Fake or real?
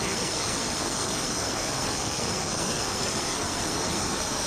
fake